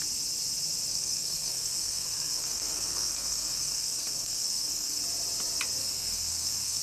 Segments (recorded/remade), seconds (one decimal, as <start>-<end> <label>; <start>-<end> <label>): 0.0-0.9 recorded; 0.9-5.0 remade; 5.0-5.8 recorded; 5.8-6.8 remade